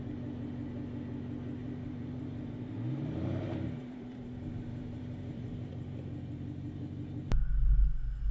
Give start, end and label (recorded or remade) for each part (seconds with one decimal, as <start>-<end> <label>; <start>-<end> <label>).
0.0-1.6 recorded; 1.6-5.7 remade; 5.7-8.3 recorded